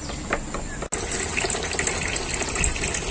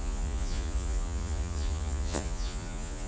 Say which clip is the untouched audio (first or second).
first